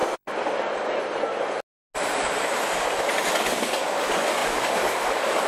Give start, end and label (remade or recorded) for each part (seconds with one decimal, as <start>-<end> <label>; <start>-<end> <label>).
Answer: 0.0-3.3 recorded; 3.3-5.5 remade